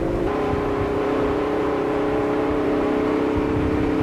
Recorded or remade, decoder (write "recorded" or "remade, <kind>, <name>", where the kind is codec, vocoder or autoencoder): remade, vocoder, BigVGAN v2